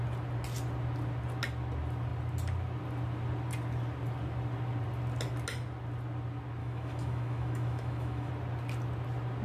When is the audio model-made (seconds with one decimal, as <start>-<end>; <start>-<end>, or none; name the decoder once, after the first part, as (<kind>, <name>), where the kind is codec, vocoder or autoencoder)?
6.6-8.3 (autoencoder, DAC-VAE)